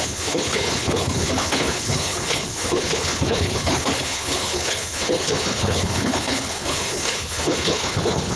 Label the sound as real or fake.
fake